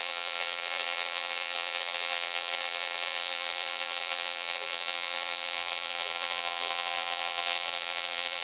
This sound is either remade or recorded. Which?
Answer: remade